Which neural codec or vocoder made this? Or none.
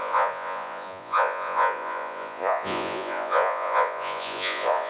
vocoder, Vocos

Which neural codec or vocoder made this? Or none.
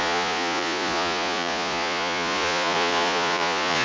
vocoder, Vocos